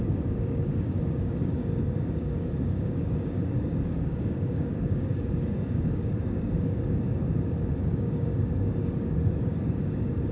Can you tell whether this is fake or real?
fake